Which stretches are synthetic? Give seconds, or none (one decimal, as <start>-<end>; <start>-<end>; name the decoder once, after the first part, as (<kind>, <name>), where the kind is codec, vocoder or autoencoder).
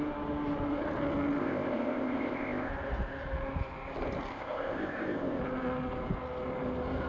1.4-2.7 (codec, ZipCodec); 4.3-5.4